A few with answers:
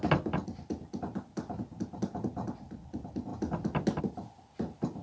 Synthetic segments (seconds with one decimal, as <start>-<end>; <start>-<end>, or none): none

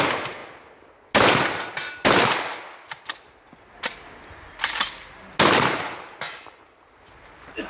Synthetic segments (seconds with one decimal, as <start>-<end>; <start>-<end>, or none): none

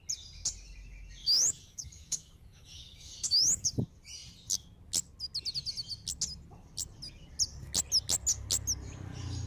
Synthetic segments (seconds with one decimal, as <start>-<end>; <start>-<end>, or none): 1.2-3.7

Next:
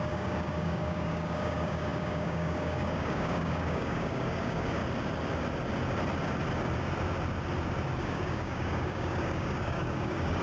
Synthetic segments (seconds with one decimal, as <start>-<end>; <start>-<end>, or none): 0.0-4.8; 8.0-10.4

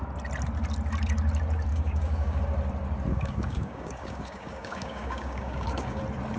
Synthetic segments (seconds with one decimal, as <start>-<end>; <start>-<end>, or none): 1.7-2.4; 3.1-6.0

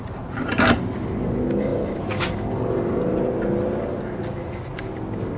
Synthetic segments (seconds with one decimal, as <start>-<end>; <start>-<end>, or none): none

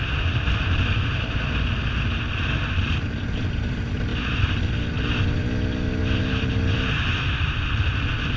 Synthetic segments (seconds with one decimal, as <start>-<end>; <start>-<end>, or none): none

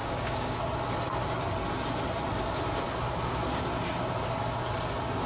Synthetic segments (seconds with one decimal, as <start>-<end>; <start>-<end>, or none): 0.0-0.6